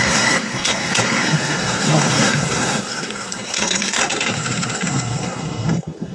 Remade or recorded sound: remade